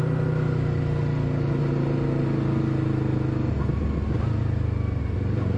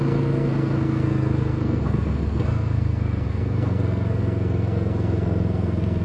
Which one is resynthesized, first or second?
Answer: second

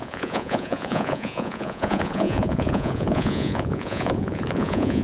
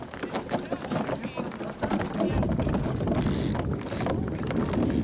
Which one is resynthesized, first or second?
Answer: first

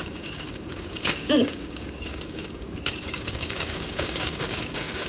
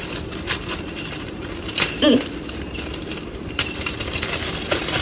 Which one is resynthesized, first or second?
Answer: first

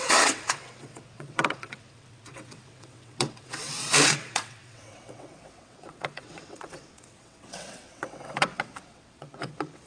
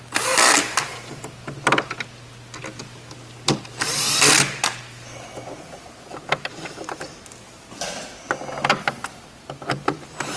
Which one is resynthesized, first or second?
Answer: first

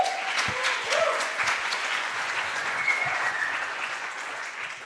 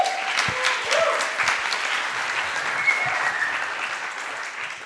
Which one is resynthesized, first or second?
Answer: first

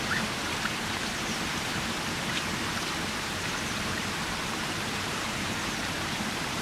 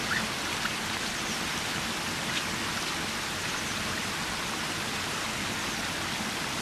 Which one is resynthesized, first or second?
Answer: first